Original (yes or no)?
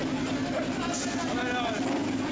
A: yes